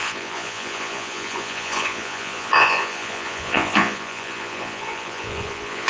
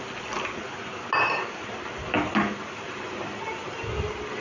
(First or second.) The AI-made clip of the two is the first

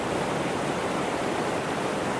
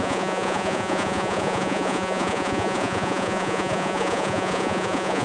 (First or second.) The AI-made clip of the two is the second